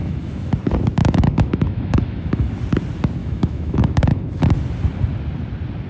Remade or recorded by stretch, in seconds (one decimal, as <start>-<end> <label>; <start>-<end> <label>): 0.0-0.5 remade; 0.5-1.0 recorded; 1.0-2.5 remade; 2.5-3.2 recorded; 3.2-4.5 remade; 4.5-5.9 recorded